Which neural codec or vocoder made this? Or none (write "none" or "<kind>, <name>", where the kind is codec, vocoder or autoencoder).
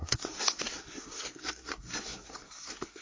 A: codec, SNAC